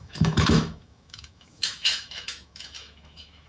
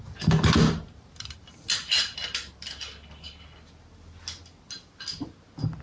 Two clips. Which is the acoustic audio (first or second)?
second